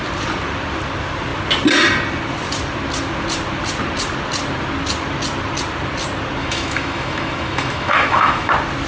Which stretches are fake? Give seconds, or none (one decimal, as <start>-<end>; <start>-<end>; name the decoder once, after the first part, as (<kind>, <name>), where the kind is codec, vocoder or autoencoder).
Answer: 6.4-8.5 (autoencoder, DAC-VAE)